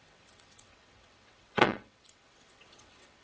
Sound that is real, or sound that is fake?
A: fake